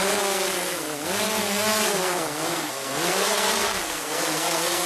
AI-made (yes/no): yes